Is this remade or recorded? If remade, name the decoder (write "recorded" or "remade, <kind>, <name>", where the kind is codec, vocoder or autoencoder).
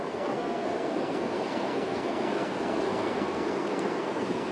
remade, codec, SNAC